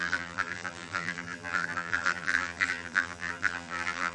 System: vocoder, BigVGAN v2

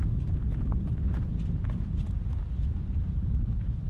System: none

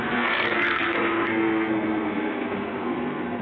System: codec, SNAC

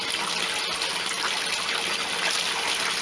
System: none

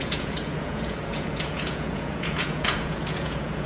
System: vocoder, Vocos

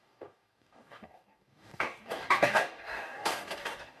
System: codec, DAC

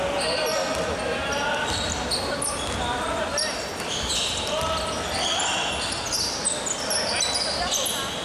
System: none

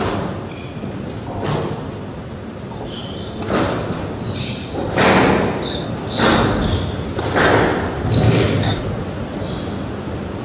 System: none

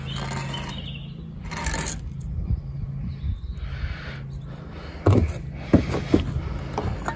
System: none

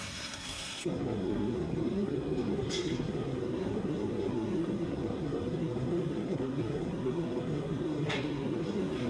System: codec, SNAC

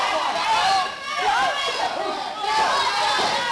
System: none